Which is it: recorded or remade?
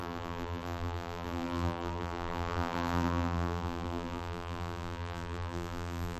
remade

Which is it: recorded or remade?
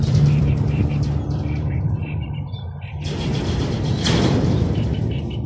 remade